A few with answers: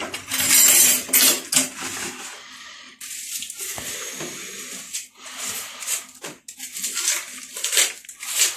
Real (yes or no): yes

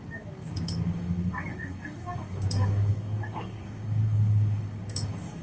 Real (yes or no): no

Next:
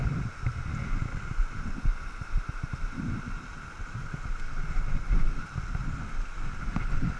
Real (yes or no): yes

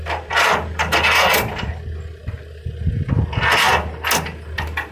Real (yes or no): yes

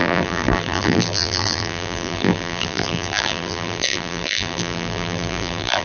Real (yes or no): no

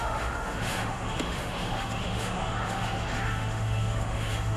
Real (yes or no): no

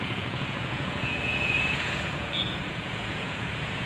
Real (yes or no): no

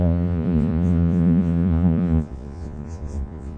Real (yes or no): no